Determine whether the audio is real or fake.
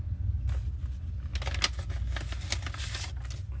real